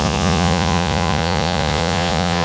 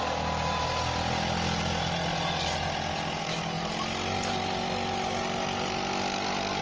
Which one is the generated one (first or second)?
first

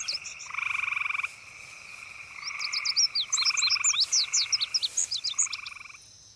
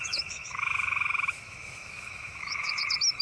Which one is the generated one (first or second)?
second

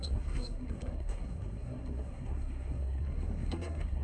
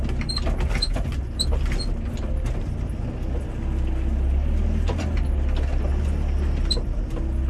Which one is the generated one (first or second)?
first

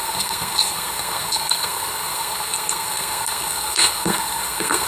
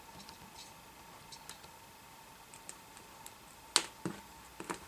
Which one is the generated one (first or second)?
first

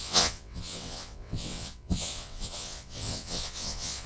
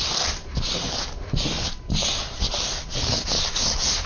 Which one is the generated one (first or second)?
first